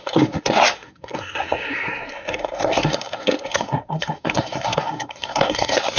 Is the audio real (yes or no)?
no